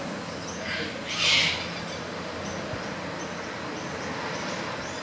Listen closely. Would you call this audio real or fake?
real